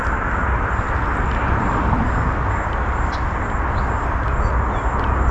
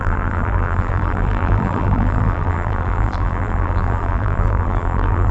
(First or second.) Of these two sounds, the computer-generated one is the second